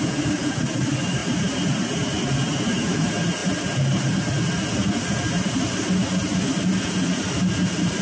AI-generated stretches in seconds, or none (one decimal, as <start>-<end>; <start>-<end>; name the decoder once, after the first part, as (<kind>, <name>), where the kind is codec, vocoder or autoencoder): none

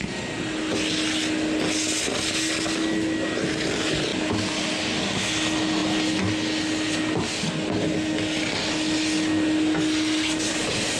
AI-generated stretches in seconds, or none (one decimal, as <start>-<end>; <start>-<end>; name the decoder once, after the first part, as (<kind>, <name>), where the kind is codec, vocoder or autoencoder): none